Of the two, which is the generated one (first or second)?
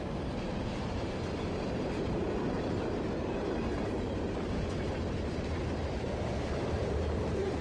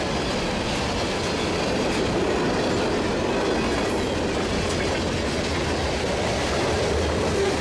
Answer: first